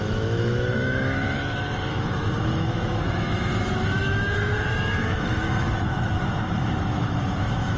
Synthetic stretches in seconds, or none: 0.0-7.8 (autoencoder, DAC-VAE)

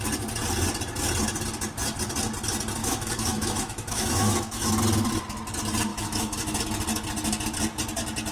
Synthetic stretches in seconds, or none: 2.8-4.7 (autoencoder, DAC-VAE); 5.9-6.6

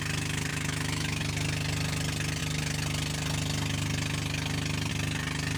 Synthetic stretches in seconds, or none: 0.5-1.2 (autoencoder, DAC-VAE)

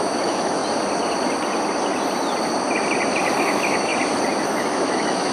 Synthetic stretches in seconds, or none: 0.0-0.6 (autoencoder, DAC-VAE); 3.4-3.9; 4.5-5.3